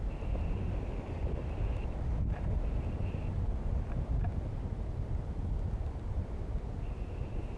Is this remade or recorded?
recorded